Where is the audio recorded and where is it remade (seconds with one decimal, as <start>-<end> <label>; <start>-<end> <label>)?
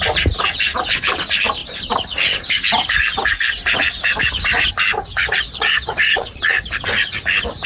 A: 0.0-5.2 recorded; 5.2-6.4 remade; 6.4-7.7 recorded